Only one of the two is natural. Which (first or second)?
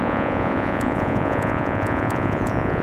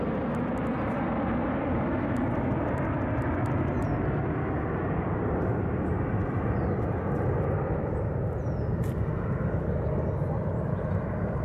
second